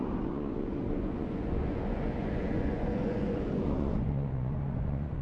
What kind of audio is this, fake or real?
fake